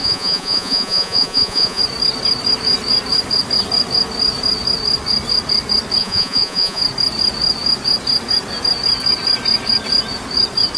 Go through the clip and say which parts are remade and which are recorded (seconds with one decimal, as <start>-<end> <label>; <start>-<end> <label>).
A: 0.0-1.8 remade; 1.8-6.0 recorded; 6.0-6.8 remade; 6.8-10.8 recorded